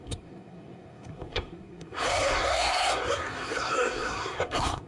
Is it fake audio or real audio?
fake